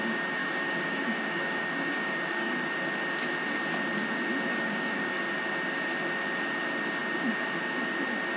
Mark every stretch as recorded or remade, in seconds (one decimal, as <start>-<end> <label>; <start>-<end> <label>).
0.0-0.4 recorded; 0.4-2.5 remade; 2.5-4.5 recorded; 4.5-5.2 remade; 5.2-8.4 recorded